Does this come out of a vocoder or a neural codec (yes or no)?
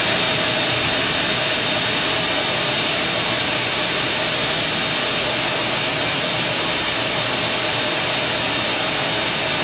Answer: no